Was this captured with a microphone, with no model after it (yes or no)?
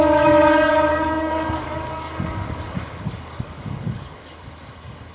no